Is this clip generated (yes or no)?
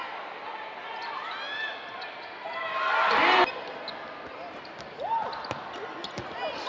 no